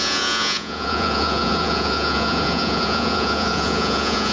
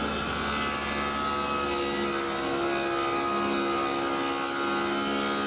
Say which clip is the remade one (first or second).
first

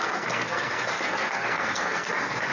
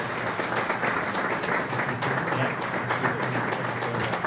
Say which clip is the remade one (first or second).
first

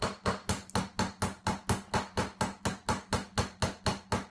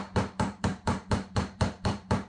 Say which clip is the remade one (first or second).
second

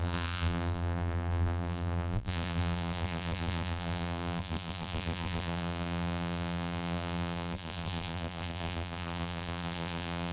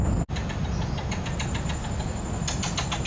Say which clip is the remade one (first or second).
first